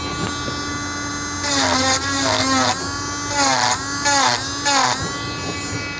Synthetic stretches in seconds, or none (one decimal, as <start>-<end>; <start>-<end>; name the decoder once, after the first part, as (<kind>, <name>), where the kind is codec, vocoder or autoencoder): none